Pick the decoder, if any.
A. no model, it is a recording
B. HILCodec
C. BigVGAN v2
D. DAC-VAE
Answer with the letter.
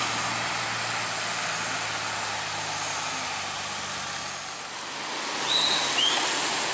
A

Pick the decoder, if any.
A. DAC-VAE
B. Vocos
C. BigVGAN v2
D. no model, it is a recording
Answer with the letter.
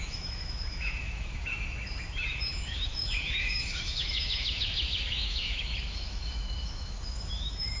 A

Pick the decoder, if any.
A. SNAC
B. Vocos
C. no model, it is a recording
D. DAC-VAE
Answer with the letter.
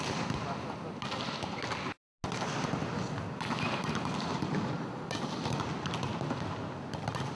C